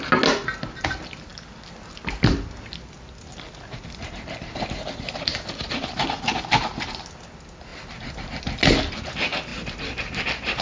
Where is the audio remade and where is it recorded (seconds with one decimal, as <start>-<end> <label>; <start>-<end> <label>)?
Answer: 0.0-10.6 recorded